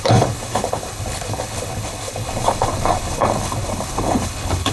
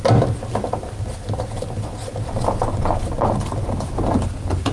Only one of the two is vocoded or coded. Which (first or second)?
first